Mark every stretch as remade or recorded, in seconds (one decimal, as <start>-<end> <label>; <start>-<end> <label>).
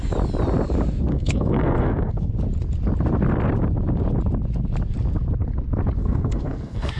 0.0-1.1 recorded; 1.1-2.3 remade; 2.3-6.0 recorded; 6.0-7.0 remade